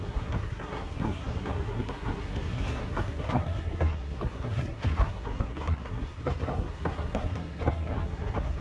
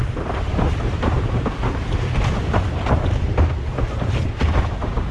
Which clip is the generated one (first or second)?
first